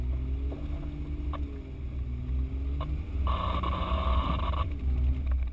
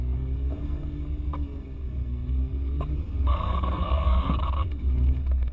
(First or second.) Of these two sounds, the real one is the first